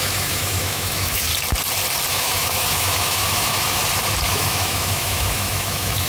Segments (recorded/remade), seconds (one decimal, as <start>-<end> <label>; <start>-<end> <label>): 0.0-1.3 remade; 1.3-2.1 recorded; 2.1-3.8 remade; 3.8-4.3 recorded; 4.3-6.1 remade